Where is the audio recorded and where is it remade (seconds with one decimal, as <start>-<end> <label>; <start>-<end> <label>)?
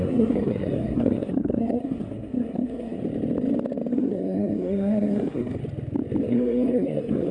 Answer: 0.0-3.0 remade; 3.0-3.9 recorded; 3.9-5.6 remade; 5.6-6.3 recorded; 6.3-7.3 remade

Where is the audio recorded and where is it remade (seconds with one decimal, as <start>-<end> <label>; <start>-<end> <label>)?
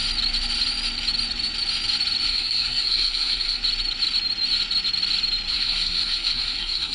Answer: 0.0-2.3 recorded; 2.3-3.6 remade; 3.6-5.5 recorded; 5.5-6.9 remade